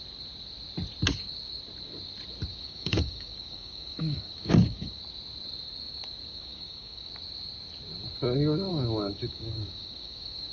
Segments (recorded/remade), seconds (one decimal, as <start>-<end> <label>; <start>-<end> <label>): 0.0-2.5 recorded; 2.5-5.0 remade; 5.0-6.3 recorded; 6.3-7.1 remade; 7.1-8.7 recorded; 8.7-10.5 remade

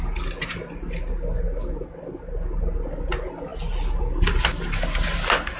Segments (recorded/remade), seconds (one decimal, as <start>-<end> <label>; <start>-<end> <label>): 0.0-5.6 recorded

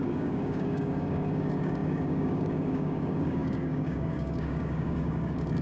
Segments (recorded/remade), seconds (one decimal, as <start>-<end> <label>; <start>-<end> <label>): 0.0-5.6 remade

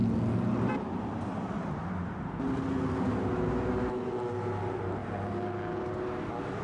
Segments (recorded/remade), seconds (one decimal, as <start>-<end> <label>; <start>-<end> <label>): 0.0-6.6 recorded

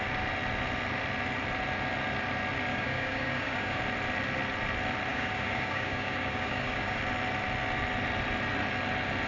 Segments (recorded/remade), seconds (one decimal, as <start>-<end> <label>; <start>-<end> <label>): 0.0-2.7 recorded; 2.7-3.8 remade; 3.8-5.1 recorded; 5.1-7.0 remade; 7.0-9.3 recorded